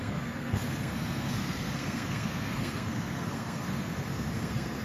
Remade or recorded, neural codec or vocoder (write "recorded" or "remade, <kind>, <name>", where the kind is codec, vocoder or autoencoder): remade, codec, SNAC